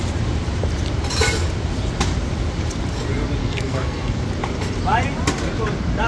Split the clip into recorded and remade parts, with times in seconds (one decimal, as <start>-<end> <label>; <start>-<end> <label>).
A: 0.0-3.4 recorded; 3.4-4.2 remade; 4.2-6.1 recorded